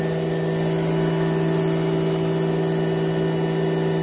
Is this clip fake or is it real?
real